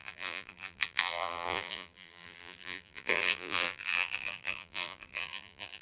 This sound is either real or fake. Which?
fake